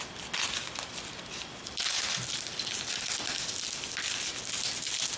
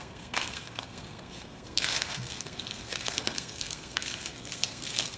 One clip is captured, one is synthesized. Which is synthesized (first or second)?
second